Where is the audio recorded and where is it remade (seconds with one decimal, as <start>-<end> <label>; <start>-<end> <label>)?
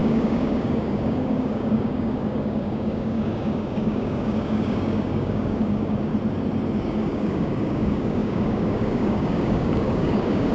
0.0-6.1 remade; 6.1-6.8 recorded; 6.8-10.5 remade